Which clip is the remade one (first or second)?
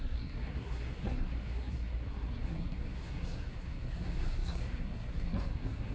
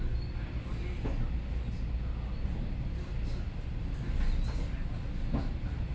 first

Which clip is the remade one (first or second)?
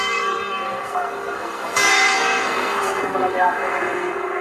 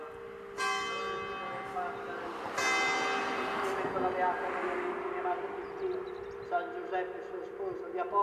first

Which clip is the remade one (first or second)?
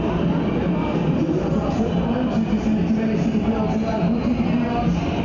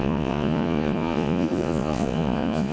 second